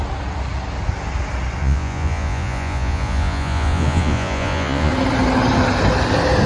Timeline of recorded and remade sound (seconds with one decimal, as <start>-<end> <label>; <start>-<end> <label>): 0.0-1.6 recorded; 1.6-4.9 remade; 4.9-6.5 recorded